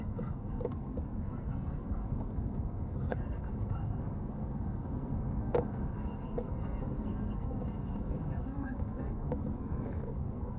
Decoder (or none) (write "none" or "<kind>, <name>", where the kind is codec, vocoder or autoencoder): codec, SNAC